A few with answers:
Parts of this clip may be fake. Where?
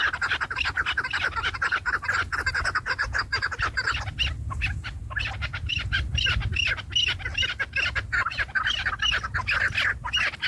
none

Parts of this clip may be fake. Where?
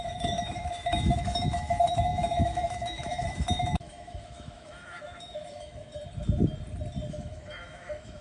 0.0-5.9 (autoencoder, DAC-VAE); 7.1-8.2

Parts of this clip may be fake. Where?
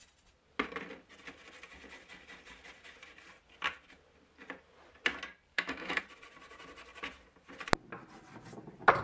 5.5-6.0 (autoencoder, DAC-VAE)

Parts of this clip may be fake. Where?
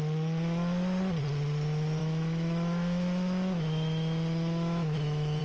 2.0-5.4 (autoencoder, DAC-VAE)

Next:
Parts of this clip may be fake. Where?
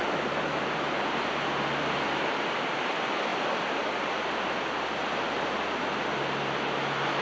none